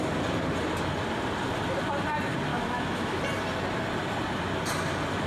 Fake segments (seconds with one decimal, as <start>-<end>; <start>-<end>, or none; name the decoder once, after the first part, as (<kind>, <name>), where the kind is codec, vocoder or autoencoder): 2.5-3.2 (autoencoder, DAC-VAE)